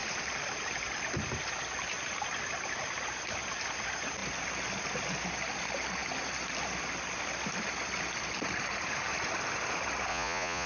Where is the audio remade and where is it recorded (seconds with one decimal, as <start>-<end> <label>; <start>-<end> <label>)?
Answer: 0.0-10.1 recorded; 10.1-10.7 remade